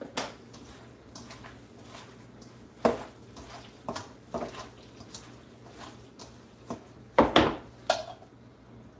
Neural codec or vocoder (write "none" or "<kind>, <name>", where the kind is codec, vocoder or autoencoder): none